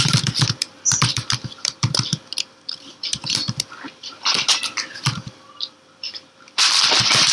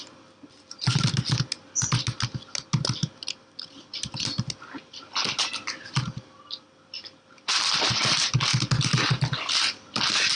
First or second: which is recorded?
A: second